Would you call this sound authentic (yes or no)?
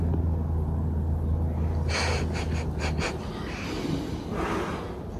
yes